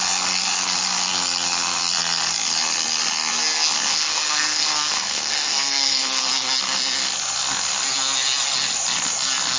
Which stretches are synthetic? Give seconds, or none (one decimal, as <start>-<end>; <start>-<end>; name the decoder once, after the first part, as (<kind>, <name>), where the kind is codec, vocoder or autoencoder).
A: 3.9-6.2 (codec, SNAC)